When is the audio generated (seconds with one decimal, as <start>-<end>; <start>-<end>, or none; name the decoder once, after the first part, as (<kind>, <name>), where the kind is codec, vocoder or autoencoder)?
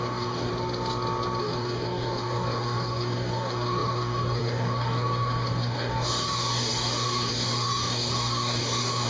0.0-0.5 (codec, DAC); 1.4-9.1